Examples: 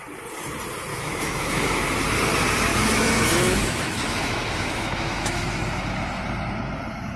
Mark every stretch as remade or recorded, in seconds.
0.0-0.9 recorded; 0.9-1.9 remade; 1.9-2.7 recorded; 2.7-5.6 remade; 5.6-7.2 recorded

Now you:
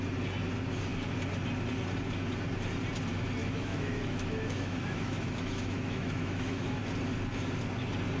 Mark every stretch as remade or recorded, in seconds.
0.0-3.4 recorded; 3.4-6.8 remade; 6.8-8.2 recorded

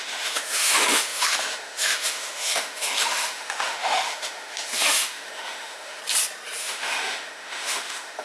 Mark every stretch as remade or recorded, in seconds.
0.0-6.0 remade; 6.0-6.6 recorded; 6.6-8.2 remade